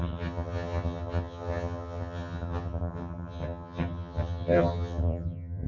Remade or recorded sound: remade